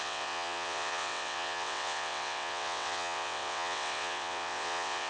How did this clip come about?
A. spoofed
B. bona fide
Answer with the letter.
A